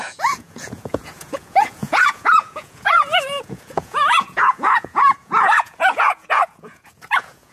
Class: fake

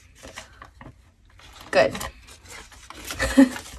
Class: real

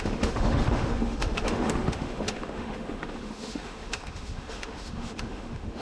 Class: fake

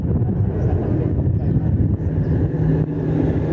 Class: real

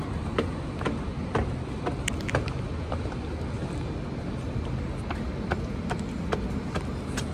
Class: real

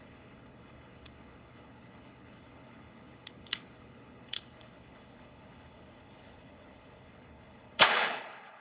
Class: fake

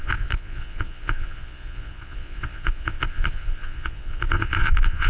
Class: fake